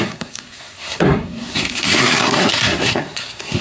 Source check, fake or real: fake